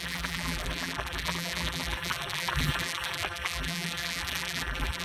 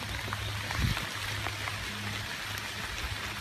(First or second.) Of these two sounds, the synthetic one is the first